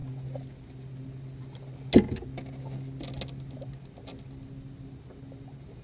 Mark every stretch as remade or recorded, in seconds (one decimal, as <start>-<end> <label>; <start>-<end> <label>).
0.0-5.8 recorded